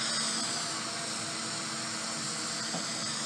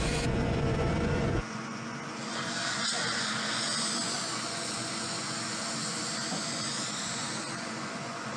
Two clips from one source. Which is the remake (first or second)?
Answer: second